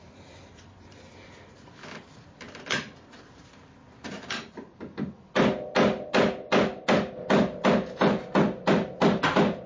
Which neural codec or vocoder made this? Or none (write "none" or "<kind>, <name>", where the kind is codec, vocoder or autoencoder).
none